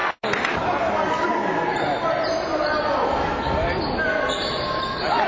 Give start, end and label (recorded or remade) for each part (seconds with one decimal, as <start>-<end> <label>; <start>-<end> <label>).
0.0-5.3 recorded